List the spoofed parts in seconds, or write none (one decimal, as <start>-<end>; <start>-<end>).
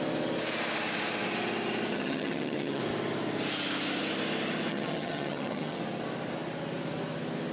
1.9-2.8; 4.7-5.8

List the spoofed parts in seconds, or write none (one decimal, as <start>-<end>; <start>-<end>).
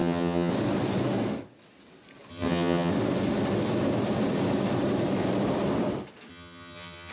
0.0-0.5; 2.3-2.9; 6.3-7.1